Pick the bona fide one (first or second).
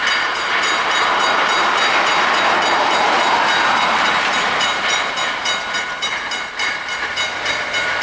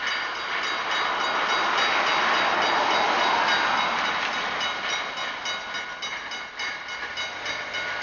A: second